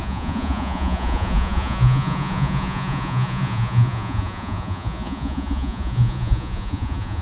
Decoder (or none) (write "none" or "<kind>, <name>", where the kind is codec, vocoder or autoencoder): vocoder, Vocos